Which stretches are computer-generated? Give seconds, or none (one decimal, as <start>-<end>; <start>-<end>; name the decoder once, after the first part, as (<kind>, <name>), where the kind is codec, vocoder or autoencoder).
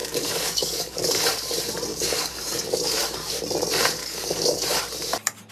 0.0-1.3 (codec, DAC); 1.9-3.4; 4.0-4.8